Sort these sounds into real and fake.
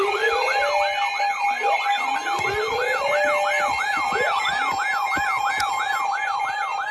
real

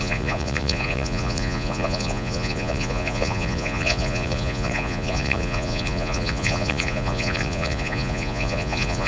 fake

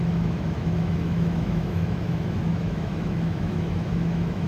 fake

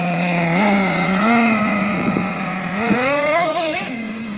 fake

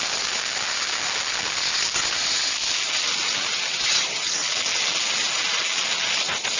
real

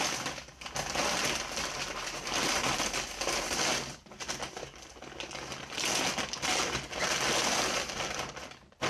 real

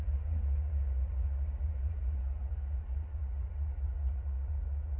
fake